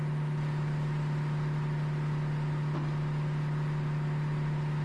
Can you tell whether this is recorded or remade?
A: recorded